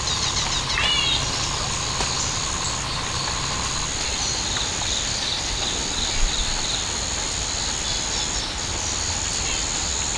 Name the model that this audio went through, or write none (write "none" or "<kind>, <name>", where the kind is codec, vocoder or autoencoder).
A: none